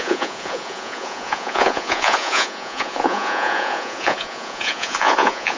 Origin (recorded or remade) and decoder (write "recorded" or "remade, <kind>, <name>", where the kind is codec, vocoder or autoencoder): remade, vocoder, Vocos